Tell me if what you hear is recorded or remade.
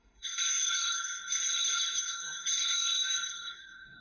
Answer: remade